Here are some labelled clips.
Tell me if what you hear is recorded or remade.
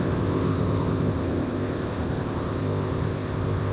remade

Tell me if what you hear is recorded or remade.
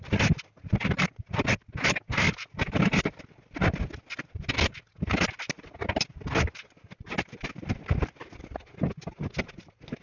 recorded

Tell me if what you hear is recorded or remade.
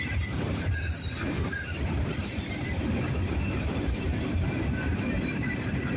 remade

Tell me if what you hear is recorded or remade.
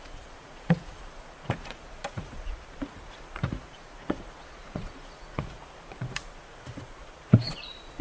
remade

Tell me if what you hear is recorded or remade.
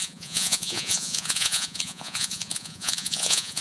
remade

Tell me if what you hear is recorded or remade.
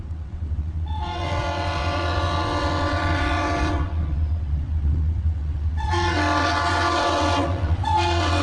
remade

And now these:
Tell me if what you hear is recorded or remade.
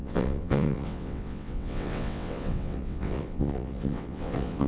remade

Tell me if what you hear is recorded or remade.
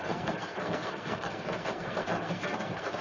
remade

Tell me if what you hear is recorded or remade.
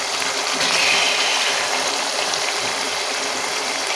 recorded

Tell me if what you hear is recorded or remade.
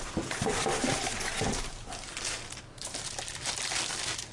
recorded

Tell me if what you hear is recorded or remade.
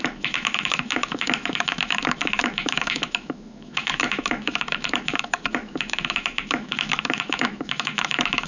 remade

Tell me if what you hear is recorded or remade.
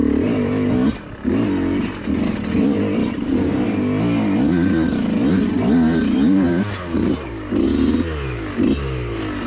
recorded